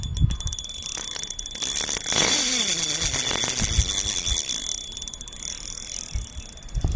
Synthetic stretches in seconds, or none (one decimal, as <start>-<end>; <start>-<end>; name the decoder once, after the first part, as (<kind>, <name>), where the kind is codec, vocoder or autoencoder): 0.9-2.3 (vocoder, BigVGAN v2)